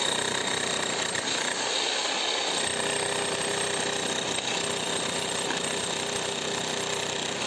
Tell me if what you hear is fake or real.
real